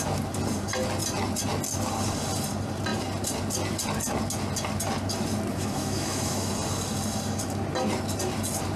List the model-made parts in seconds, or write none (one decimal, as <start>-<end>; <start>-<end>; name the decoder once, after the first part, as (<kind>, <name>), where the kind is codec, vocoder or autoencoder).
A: 5.5-6.5 (autoencoder, DAC-VAE)